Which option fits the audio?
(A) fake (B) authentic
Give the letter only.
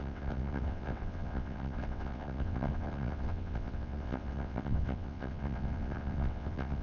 A